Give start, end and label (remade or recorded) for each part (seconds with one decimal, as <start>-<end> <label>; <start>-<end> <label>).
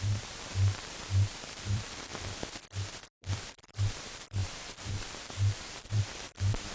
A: 0.0-2.1 remade; 2.1-2.9 recorded; 2.9-6.7 remade